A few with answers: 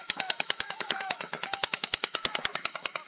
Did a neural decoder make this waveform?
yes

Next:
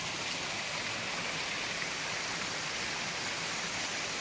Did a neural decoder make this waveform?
no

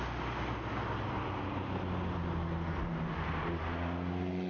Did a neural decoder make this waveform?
no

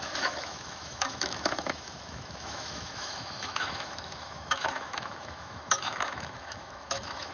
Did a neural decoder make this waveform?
yes